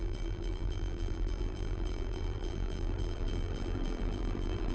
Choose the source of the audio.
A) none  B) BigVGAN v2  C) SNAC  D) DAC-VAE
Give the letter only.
B